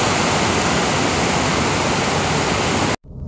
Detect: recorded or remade recorded